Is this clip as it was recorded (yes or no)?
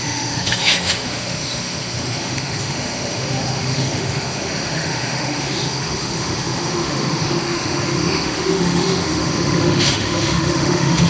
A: no